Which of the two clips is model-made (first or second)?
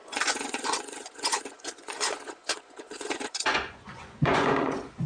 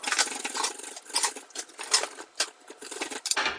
first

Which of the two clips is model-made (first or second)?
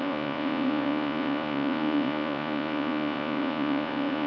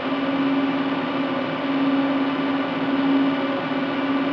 first